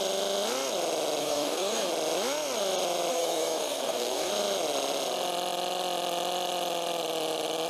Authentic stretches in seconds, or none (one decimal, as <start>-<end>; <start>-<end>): 0.0-1.2; 1.9-3.1; 4.3-7.7